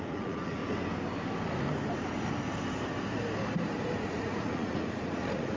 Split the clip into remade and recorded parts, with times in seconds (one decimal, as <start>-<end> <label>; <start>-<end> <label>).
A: 0.0-0.6 remade; 0.6-4.0 recorded; 4.0-5.6 remade